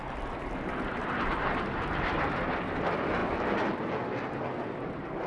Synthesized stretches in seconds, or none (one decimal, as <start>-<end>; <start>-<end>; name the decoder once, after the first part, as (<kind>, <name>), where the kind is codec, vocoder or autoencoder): none